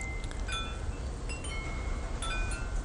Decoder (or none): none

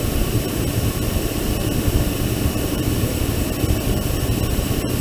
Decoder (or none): vocoder, BigVGAN v2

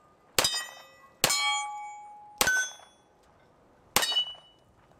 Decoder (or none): none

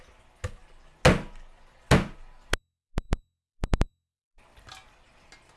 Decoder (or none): none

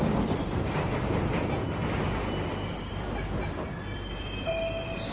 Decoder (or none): none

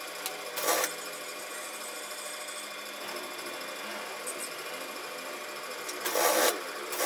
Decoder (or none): none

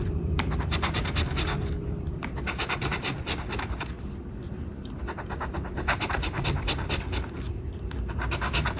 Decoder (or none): vocoder, BigVGAN v2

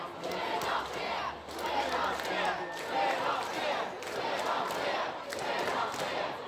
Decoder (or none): none